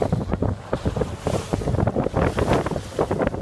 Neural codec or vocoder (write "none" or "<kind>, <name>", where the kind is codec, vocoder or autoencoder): none